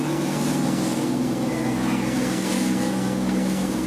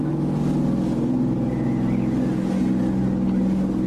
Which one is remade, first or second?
first